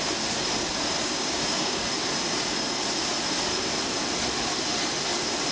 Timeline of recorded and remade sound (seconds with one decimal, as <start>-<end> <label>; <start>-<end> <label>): 0.0-1.0 recorded; 1.0-1.8 remade; 1.8-5.5 recorded

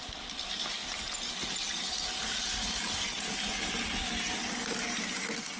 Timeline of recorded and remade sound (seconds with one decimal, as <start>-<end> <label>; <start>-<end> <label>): 0.0-5.6 recorded

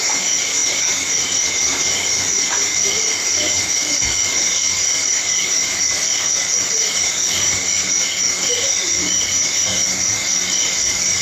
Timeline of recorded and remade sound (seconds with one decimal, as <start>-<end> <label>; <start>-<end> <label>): 0.0-11.2 remade

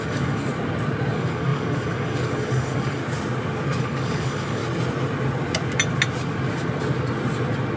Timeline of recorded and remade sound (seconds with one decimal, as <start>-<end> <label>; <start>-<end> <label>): 0.0-0.5 remade; 0.5-1.1 recorded; 1.1-3.0 remade; 3.0-3.8 recorded; 3.8-4.6 remade; 4.6-7.8 recorded